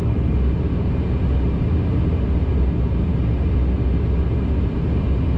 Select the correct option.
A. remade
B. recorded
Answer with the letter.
B